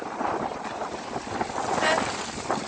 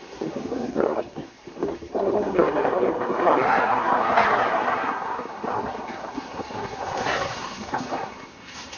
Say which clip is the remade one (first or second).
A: second